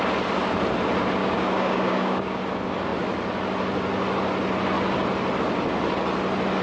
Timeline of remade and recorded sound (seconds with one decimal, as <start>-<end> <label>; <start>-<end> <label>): 0.0-1.2 recorded; 1.2-2.4 remade; 2.4-6.6 recorded